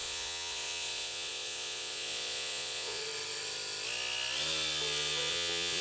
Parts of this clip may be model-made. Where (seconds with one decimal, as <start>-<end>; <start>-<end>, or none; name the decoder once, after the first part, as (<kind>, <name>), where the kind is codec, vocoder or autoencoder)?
0.0-3.0 (vocoder, Vocos); 5.3-5.8